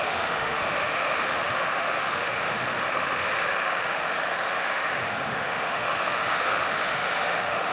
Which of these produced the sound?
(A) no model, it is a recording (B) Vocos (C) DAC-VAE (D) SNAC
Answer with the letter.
C